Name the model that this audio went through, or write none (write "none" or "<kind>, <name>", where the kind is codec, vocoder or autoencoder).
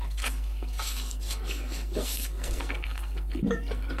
codec, SNAC